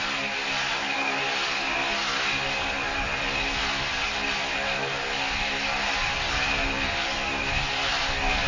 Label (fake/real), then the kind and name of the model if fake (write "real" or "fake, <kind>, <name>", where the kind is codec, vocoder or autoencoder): real